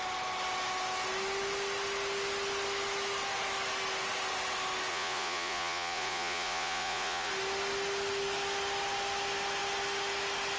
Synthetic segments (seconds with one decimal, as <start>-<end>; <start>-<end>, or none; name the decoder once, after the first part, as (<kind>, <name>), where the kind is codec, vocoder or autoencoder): 4.9-7.3 (vocoder, Vocos)